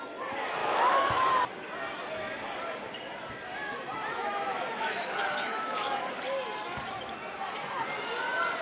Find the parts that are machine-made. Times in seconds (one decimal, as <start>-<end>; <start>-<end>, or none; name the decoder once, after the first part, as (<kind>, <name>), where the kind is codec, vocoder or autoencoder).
0.6-1.3 (autoencoder, DAC-VAE); 4.1-6.0